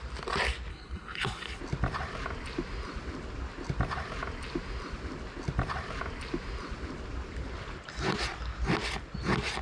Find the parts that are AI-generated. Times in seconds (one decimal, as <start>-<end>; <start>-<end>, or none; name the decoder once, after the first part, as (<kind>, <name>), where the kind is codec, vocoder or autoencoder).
0.7-1.6 (codec, HILCodec)